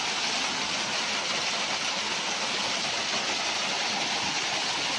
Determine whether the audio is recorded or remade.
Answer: recorded